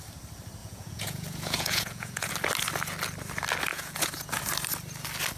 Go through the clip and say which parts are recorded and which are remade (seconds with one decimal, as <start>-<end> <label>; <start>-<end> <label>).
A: 0.0-0.6 recorded; 0.6-2.3 remade; 2.3-3.7 recorded; 3.7-4.4 remade; 4.4-5.4 recorded